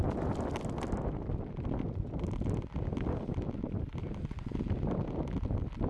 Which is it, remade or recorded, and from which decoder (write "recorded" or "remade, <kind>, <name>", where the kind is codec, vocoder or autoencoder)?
recorded